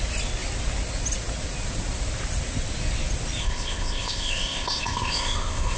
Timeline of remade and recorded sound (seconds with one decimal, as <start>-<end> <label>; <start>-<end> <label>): 0.0-3.4 recorded; 3.4-5.8 remade